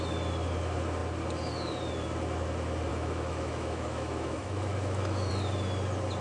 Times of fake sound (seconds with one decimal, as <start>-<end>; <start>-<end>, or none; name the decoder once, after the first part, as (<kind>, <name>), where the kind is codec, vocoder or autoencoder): 2.9-5.3 (autoencoder, DAC-VAE)